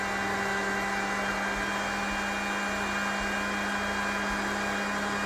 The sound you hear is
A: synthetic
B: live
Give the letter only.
B